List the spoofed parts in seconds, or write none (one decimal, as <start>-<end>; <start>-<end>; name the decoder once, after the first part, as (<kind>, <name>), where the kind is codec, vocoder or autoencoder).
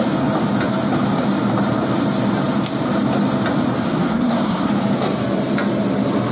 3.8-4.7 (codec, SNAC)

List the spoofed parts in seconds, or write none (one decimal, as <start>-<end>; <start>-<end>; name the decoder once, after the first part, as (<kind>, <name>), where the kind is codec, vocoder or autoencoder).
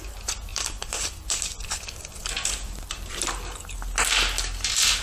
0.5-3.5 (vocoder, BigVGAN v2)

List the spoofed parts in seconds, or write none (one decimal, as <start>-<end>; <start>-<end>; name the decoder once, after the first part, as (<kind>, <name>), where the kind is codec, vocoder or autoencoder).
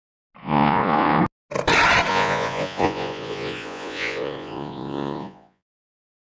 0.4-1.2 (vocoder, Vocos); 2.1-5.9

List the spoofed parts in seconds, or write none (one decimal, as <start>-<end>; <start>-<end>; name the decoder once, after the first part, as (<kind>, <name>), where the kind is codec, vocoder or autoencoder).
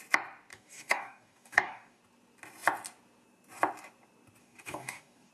0.5-2.0 (codec, DAC); 4.4-5.3